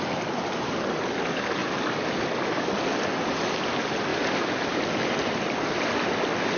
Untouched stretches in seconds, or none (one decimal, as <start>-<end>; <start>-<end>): 0.0-6.6